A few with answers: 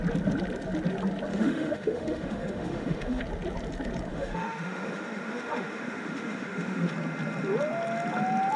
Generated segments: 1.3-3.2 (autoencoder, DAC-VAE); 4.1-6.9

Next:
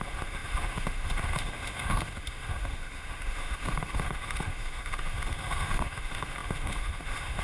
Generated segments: 0.0-7.4 (autoencoder, DAC-VAE)

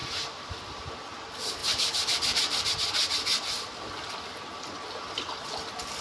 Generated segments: 0.0-0.9 (vocoder, BigVGAN v2); 1.6-2.7

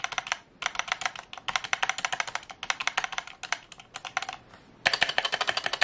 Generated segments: none